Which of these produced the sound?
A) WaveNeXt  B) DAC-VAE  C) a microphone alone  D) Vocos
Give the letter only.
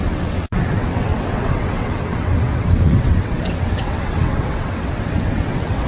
A